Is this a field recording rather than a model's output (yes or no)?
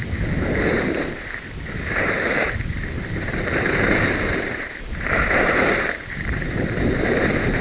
no